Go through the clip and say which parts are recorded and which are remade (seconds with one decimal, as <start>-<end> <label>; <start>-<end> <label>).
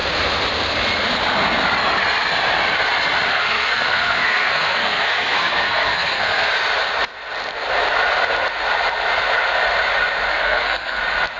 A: 0.0-3.3 recorded; 3.3-6.5 remade; 6.5-10.3 recorded; 10.3-11.0 remade; 11.0-11.4 recorded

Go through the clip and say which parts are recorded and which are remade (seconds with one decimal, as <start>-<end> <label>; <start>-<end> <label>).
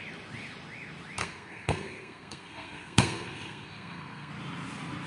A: 0.0-1.2 recorded; 1.2-4.3 remade; 4.3-5.1 recorded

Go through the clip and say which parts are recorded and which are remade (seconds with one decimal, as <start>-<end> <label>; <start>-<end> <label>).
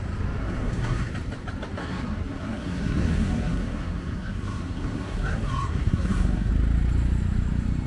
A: 0.0-0.4 recorded; 0.4-1.1 remade; 1.1-1.8 recorded; 1.8-6.5 remade; 6.5-7.9 recorded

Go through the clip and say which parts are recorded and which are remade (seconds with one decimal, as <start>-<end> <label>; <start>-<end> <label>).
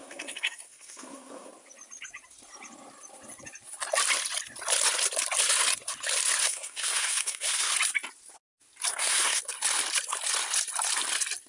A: 0.0-1.5 remade; 1.5-6.4 recorded; 6.4-7.7 remade; 7.7-8.9 recorded; 8.9-9.4 remade; 9.4-11.5 recorded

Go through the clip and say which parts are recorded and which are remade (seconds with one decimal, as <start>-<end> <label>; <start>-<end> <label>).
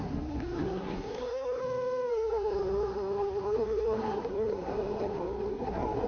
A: 0.0-1.6 remade; 1.6-2.1 recorded; 2.1-6.1 remade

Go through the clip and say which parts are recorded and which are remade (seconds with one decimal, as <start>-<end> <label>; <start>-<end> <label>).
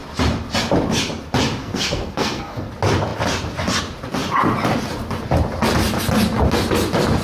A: 0.0-1.6 recorded; 1.6-2.7 remade; 2.7-7.2 recorded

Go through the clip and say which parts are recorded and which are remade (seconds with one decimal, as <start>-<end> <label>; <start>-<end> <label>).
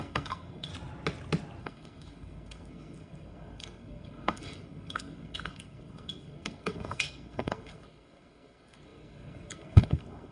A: 0.0-0.7 remade; 0.7-1.6 recorded; 1.6-10.3 remade